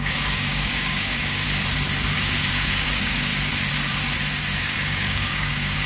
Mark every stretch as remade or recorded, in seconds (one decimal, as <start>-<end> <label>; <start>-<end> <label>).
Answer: 0.0-1.4 remade; 1.4-2.5 recorded; 2.5-3.3 remade; 3.3-4.6 recorded; 4.6-5.9 remade